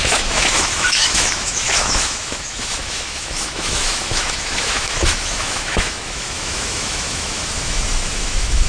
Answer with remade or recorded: remade